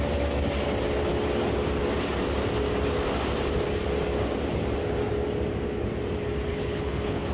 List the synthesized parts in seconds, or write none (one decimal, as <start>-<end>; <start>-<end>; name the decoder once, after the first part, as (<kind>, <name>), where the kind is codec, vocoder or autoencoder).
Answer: 6.5-7.3 (codec, HILCodec)